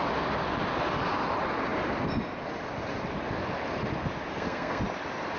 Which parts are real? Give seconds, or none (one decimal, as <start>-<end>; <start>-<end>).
0.0-4.3; 4.8-5.4